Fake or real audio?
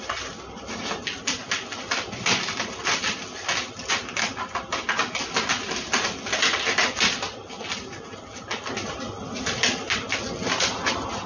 real